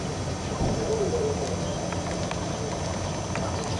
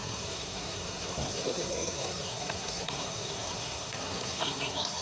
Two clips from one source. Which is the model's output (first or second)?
second